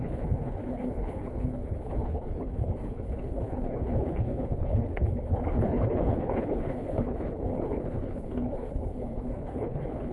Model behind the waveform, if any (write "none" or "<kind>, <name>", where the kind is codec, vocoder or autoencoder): codec, HILCodec